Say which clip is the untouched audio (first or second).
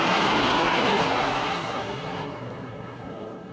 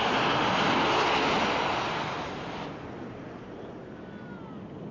second